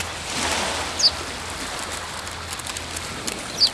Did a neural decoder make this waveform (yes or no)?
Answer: no